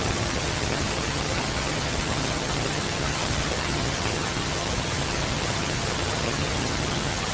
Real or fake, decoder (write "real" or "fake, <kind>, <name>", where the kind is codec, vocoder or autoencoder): fake, vocoder, HiFi-GAN